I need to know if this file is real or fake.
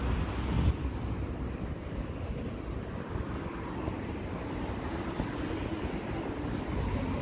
real